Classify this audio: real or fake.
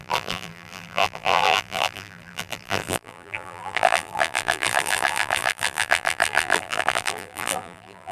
fake